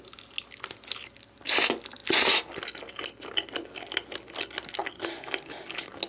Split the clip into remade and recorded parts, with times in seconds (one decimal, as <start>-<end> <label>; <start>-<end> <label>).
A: 0.0-6.1 recorded